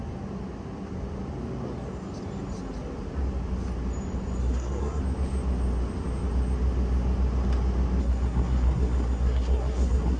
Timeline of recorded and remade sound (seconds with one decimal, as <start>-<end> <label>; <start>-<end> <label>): 0.0-4.4 recorded; 4.4-5.0 remade; 5.0-8.0 recorded; 8.0-10.2 remade